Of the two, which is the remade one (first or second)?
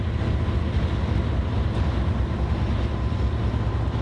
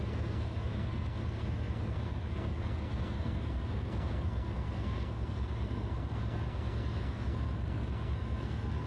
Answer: second